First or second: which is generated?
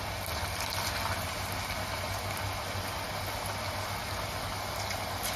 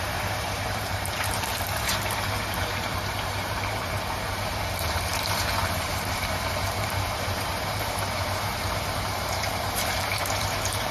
second